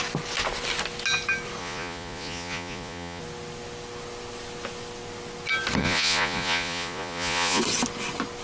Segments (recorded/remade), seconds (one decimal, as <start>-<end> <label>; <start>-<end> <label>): 0.0-1.6 recorded; 1.6-3.2 remade; 3.2-5.8 recorded; 5.8-7.6 remade; 7.6-8.4 recorded